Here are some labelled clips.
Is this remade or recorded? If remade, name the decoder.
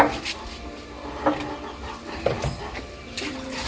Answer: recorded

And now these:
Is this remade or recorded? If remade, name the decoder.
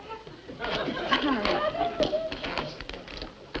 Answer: recorded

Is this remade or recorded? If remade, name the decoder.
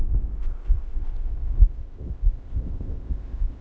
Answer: remade, codec, ZipCodec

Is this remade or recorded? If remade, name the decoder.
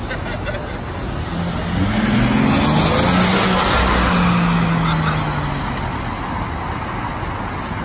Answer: recorded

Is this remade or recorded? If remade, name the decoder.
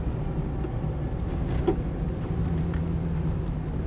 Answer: recorded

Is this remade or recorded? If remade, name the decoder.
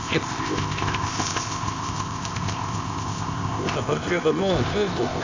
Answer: remade, codec, ZipCodec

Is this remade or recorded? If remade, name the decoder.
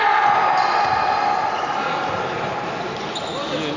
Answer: recorded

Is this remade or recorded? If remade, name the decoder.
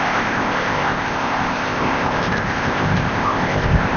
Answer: remade, codec, ZipCodec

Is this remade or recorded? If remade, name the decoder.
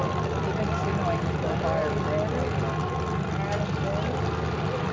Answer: recorded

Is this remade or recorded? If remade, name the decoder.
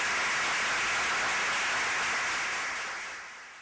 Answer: recorded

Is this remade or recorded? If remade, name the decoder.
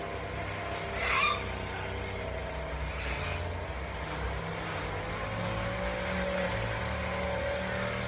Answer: recorded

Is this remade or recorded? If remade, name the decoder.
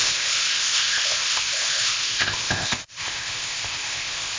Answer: remade, codec, ZipCodec